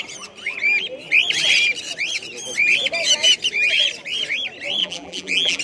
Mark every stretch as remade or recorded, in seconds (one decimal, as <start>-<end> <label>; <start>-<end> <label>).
0.0-4.8 recorded; 4.8-5.6 remade